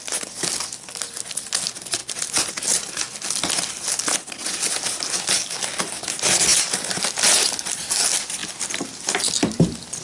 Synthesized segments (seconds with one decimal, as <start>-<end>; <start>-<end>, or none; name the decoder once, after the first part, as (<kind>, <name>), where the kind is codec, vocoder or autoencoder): none